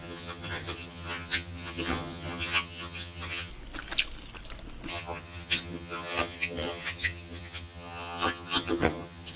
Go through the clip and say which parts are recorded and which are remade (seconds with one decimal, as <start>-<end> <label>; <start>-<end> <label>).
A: 0.0-3.5 remade; 3.5-4.9 recorded; 4.9-9.4 remade